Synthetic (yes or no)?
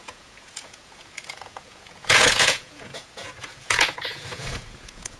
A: yes